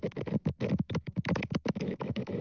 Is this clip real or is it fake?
fake